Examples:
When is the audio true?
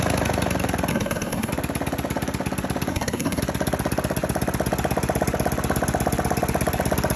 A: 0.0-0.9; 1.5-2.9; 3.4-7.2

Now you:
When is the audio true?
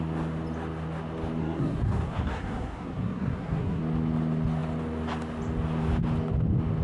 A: 0.0-1.4; 3.8-6.8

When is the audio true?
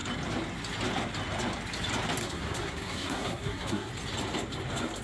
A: 0.0-2.2; 3.9-5.0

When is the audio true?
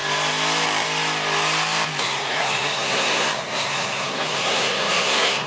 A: 0.0-2.0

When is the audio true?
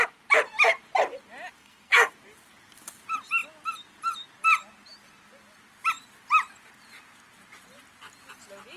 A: 0.0-1.6; 2.1-8.8